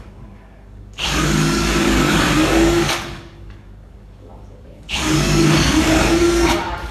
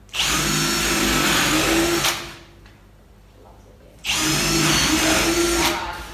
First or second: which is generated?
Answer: first